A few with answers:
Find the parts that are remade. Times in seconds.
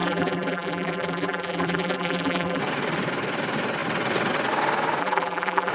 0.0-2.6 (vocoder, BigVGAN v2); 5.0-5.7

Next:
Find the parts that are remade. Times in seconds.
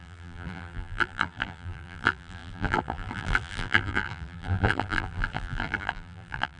0.0-6.6 (vocoder, BigVGAN v2)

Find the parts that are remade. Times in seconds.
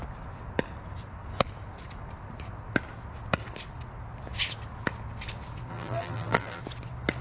5.7-6.6 (vocoder, BigVGAN v2)